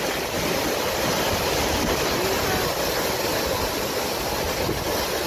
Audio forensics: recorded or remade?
recorded